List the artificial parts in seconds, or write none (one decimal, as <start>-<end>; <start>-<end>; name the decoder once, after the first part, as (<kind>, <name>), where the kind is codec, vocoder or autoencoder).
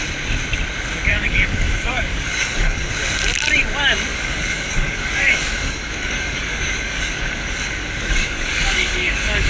1.1-2.9 (codec, DAC); 4.1-9.5